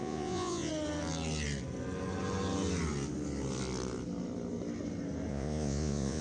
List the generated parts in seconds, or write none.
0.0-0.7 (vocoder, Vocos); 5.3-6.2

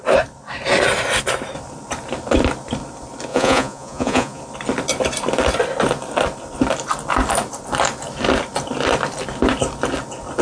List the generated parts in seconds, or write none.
3.3-4.4 (vocoder, Vocos)

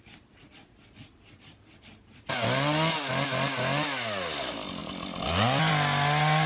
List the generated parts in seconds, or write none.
none

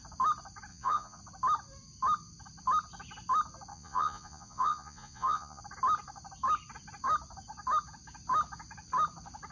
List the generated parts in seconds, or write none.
0.7-1.2 (vocoder, Vocos); 3.7-5.6

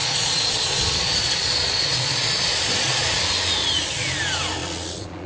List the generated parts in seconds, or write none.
0.0-3.2 (vocoder, Vocos); 3.6-4.1; 4.6-5.3